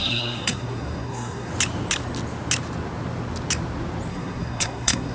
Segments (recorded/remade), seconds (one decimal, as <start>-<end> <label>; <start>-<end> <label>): 0.0-1.5 remade; 1.5-4.1 recorded; 4.1-5.1 remade